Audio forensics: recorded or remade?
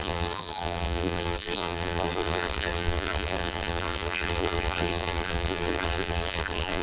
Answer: remade